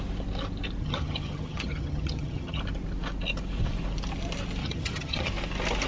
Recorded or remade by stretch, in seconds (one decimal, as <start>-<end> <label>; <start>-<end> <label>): 0.0-0.8 recorded; 0.8-2.6 remade; 2.6-4.6 recorded; 4.6-5.3 remade; 5.3-5.9 recorded